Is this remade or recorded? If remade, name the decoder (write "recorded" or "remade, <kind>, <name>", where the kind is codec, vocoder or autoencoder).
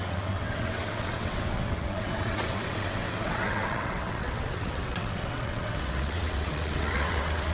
remade, vocoder, WaveNeXt